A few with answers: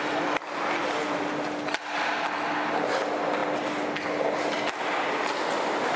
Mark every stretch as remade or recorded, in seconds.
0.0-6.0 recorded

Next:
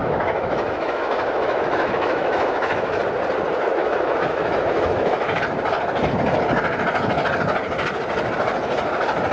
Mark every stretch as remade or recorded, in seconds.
0.0-3.0 remade; 3.0-3.8 recorded; 3.8-5.4 remade; 5.4-9.3 recorded

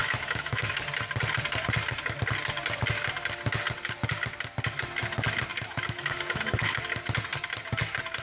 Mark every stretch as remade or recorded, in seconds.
0.0-0.8 remade; 0.8-5.5 recorded; 5.5-6.8 remade; 6.8-8.2 recorded

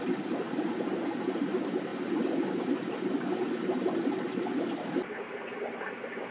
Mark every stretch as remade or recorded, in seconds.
0.0-6.3 recorded